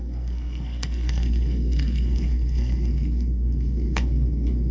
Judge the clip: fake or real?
fake